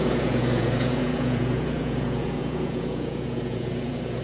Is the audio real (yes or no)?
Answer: no